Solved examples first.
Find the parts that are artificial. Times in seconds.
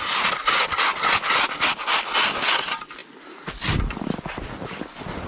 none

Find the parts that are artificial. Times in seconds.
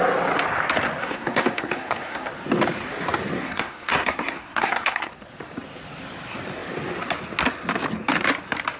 1.0-2.3 (codec, SNAC); 3.4-5.1